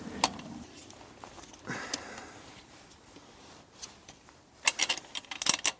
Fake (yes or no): no